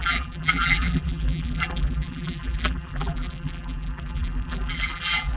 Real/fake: fake